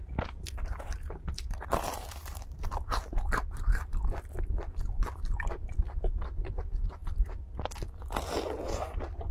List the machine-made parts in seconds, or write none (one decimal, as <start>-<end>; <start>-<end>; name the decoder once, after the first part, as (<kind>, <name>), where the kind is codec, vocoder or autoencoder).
0.7-5.8 (vocoder, BigVGAN v2)